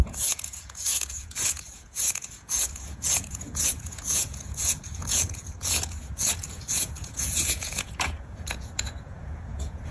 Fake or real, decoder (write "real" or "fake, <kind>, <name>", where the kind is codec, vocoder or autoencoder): fake, vocoder, Vocos